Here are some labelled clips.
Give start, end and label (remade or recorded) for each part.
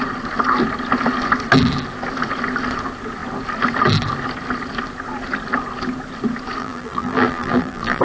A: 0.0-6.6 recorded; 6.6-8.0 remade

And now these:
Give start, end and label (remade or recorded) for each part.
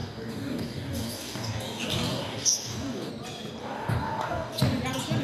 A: 0.0-3.1 remade; 3.1-3.6 recorded; 3.6-4.6 remade; 4.6-5.2 recorded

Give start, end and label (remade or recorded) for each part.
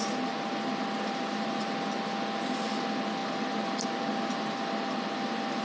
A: 0.0-5.6 recorded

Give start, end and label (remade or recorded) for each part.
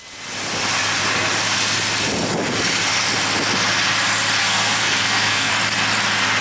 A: 0.0-4.4 recorded; 4.4-5.5 remade; 5.5-6.4 recorded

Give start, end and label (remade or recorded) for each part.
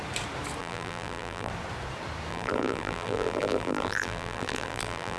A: 0.0-0.6 recorded; 0.6-1.5 remade; 1.5-2.3 recorded; 2.3-5.2 remade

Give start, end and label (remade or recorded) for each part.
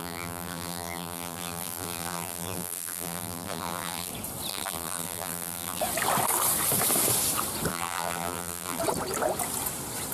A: 0.0-4.1 remade; 4.1-4.5 recorded; 4.5-5.8 remade; 5.8-7.7 recorded; 7.7-8.8 remade; 8.8-10.1 recorded